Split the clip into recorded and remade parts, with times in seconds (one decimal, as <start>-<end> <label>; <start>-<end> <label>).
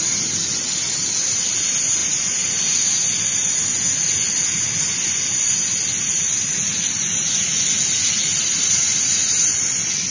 0.0-10.1 recorded